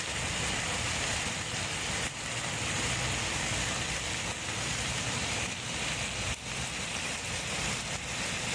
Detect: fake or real fake